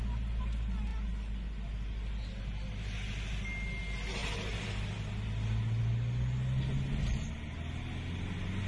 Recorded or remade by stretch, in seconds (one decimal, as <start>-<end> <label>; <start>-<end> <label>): 0.0-8.7 recorded